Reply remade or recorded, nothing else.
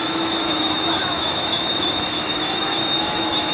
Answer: remade